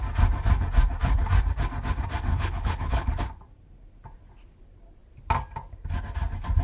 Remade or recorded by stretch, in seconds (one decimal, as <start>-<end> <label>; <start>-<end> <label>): 0.0-2.3 recorded; 2.3-3.2 remade; 3.2-6.6 recorded